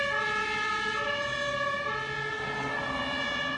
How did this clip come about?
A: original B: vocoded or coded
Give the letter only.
A